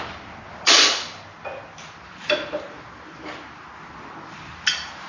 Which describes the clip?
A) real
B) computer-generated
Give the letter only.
A